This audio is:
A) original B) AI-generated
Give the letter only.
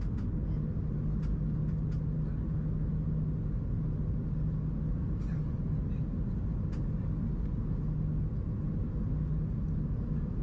A